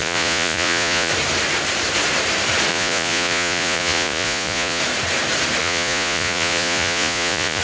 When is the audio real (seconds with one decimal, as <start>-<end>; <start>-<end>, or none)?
1.1-2.7; 4.8-5.6